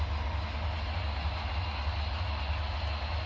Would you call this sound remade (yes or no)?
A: no